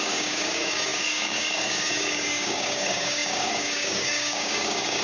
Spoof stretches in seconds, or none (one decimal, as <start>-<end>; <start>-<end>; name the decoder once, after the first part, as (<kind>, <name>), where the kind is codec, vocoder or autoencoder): 0.0-5.0 (codec, DAC)